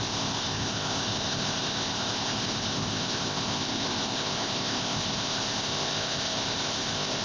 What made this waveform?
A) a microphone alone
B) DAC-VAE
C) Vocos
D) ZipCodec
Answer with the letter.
D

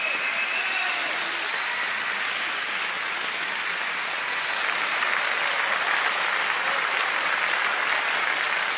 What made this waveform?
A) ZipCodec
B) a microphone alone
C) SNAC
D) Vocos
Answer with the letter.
B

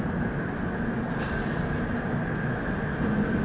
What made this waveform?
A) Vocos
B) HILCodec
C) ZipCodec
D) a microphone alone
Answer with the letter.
D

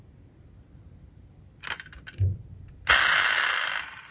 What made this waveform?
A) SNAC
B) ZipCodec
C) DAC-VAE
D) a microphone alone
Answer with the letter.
D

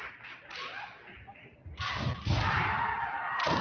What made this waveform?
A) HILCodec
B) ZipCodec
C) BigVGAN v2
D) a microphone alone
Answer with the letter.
D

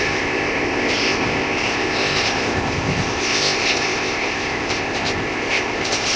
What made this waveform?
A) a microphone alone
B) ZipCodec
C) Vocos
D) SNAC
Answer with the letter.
B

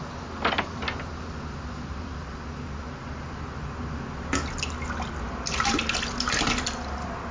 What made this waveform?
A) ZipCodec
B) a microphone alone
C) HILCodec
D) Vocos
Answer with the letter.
B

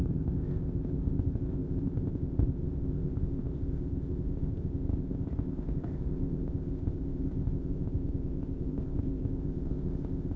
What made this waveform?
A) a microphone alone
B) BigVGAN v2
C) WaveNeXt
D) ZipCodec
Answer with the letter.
D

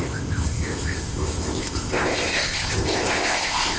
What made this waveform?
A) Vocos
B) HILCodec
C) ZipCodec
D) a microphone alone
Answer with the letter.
C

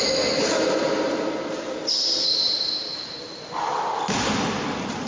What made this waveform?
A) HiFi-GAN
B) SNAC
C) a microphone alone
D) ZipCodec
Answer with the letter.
C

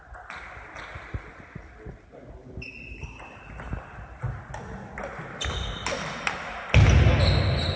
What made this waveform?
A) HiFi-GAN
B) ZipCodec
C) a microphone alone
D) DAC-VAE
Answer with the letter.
C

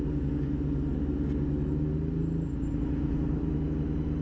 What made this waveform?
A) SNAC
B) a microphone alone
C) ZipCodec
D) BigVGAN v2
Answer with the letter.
B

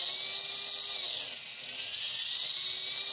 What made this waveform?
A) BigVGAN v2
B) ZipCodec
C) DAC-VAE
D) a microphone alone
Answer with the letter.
D